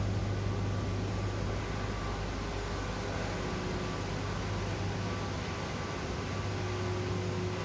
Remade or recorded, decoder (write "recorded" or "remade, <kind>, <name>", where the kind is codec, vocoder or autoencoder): recorded